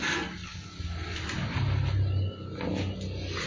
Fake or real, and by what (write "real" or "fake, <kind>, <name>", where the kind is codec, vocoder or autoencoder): real